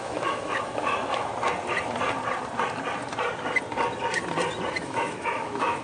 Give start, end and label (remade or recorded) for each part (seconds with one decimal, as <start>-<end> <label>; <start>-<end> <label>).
0.0-1.3 remade; 1.3-4.8 recorded; 4.8-5.8 remade